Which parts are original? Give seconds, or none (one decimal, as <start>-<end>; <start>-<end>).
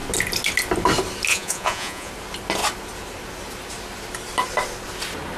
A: 0.0-1.3; 2.1-5.4